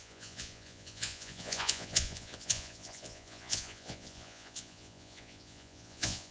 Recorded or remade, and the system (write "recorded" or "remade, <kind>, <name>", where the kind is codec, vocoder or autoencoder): remade, vocoder, Vocos